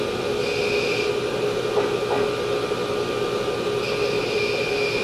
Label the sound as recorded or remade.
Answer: recorded